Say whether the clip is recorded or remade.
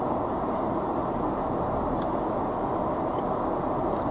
recorded